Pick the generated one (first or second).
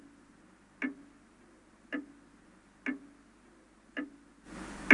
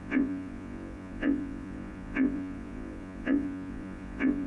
second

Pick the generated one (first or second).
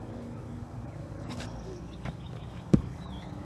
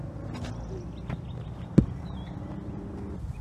first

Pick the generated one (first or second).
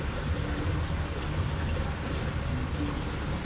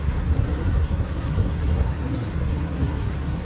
second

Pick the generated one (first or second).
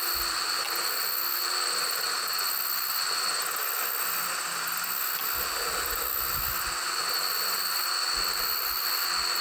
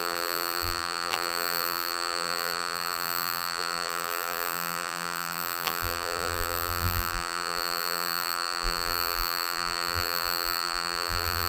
second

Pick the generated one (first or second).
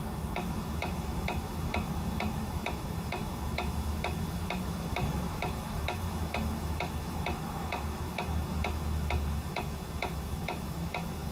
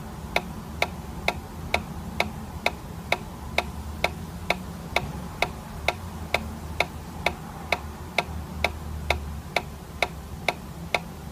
first